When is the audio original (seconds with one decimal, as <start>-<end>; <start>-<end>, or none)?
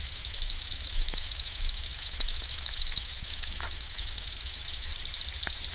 4.9-5.7